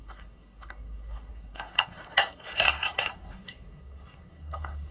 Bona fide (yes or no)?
no